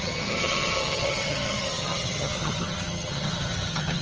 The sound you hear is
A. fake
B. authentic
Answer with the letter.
A